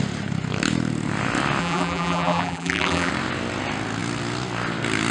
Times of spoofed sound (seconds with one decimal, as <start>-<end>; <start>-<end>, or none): 1.6-3.1